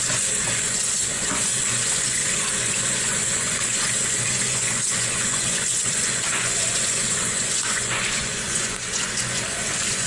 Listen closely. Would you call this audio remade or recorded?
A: remade